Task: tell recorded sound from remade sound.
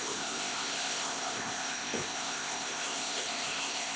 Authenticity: remade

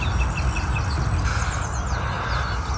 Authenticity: recorded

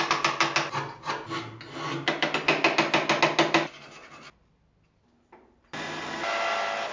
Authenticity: recorded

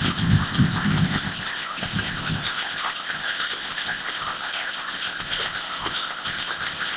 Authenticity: remade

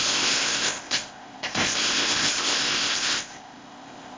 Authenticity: remade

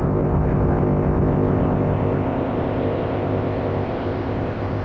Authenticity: remade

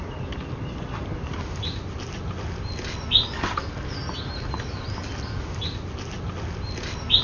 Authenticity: recorded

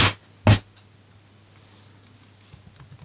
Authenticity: recorded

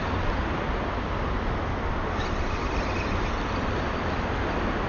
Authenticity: recorded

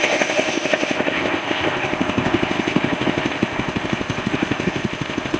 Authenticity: remade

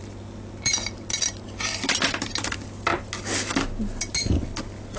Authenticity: recorded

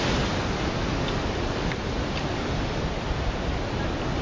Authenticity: recorded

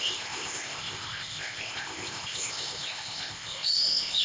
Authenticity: remade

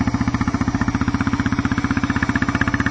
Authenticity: recorded